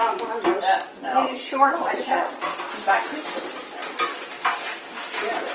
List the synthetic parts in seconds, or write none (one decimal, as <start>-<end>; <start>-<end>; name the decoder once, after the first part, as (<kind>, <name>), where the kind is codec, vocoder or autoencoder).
1.1-2.6 (vocoder, Vocos)